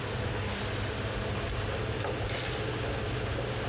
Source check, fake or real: real